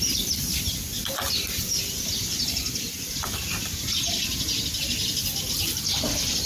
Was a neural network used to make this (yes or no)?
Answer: no